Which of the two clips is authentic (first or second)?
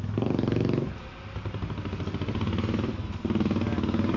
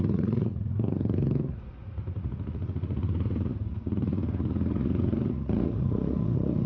first